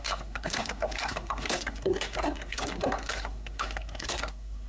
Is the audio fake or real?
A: fake